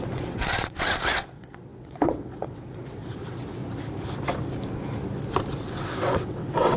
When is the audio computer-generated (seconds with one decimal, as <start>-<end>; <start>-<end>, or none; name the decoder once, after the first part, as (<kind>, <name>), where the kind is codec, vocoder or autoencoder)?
0.0-3.6 (vocoder, WaveNeXt); 5.6-6.8